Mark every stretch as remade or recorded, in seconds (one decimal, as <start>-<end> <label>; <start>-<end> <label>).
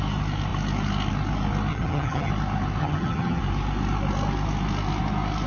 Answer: 0.0-1.7 recorded; 1.7-2.3 remade; 2.3-2.8 recorded; 2.8-3.4 remade; 3.4-5.5 recorded